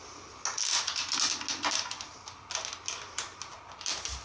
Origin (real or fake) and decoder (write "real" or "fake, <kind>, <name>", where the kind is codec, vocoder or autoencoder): real